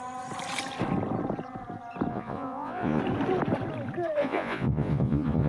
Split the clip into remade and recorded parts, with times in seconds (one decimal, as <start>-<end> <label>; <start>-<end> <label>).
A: 0.0-2.1 recorded; 2.1-3.0 remade; 3.0-4.2 recorded; 4.2-5.5 remade